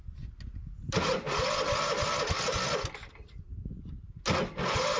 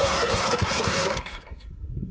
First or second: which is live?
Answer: first